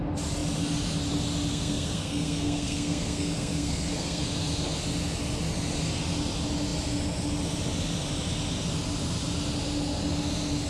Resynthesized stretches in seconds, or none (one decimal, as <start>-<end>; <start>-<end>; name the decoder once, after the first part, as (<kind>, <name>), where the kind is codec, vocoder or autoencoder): 1.5-4.2 (codec, SNAC)